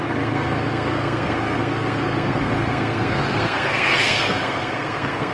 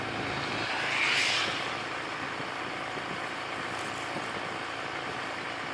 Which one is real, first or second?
second